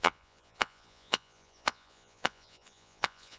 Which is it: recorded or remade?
remade